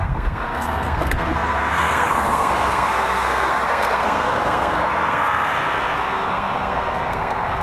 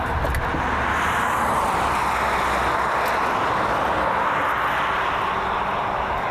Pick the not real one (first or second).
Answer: first